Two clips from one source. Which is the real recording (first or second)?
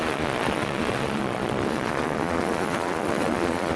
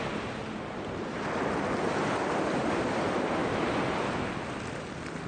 second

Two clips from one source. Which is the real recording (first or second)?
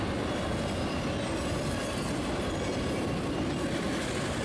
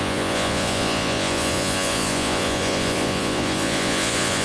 first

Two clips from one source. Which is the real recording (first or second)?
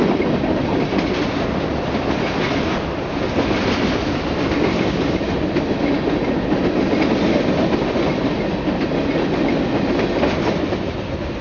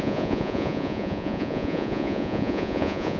first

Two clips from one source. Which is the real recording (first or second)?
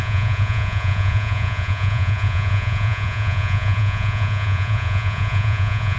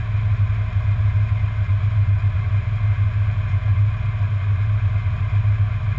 second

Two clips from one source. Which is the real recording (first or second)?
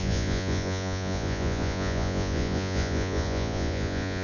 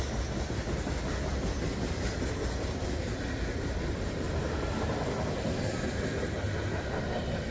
second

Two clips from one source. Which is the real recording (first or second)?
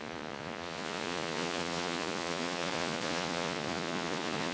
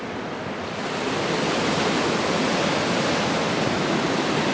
second